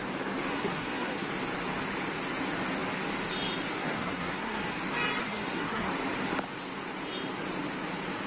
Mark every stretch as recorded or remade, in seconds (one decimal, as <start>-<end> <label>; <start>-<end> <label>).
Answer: 0.0-0.5 recorded; 0.5-1.3 remade; 1.3-3.8 recorded; 3.8-4.8 remade; 4.8-5.2 recorded; 5.2-5.9 remade; 5.9-8.3 recorded